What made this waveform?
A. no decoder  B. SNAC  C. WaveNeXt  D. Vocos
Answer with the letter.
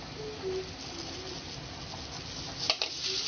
A